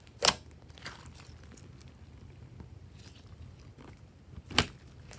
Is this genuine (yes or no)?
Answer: yes